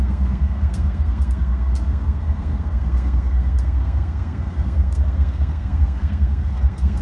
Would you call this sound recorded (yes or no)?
no